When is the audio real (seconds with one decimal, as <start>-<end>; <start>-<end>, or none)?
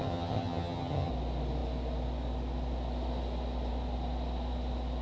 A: 1.1-5.0